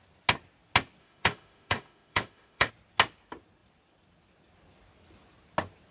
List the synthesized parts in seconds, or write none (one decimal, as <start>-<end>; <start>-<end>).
1.0-2.7